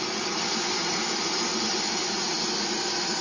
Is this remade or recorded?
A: recorded